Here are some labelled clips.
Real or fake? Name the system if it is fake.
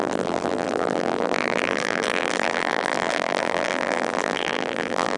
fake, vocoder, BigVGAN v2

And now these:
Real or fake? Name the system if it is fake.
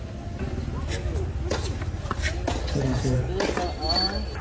real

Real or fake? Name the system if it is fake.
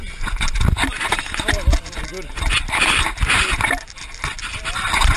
real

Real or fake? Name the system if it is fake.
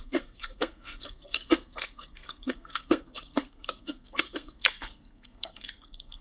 fake, codec, SNAC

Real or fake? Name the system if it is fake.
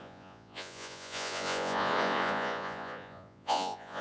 fake, vocoder, Vocos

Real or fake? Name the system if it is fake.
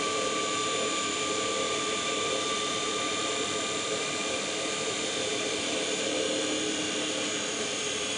fake, vocoder, BigVGAN v2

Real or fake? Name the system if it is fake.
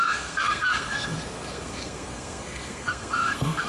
fake, codec, SNAC